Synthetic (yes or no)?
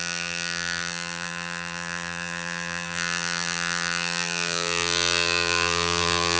yes